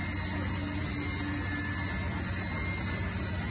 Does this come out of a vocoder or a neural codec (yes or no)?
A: no